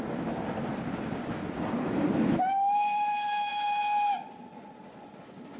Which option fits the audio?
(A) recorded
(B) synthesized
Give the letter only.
A